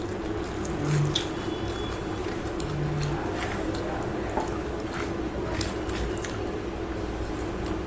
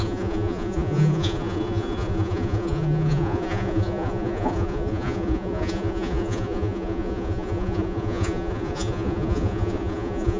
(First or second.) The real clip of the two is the first